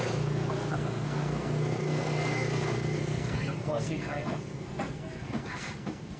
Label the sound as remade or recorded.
remade